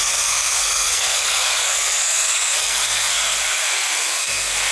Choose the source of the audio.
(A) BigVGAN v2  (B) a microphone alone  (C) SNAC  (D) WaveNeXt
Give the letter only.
C